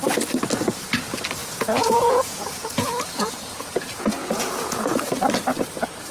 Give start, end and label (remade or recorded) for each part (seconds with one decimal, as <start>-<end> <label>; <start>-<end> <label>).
0.0-1.4 recorded; 1.4-5.1 remade; 5.1-6.1 recorded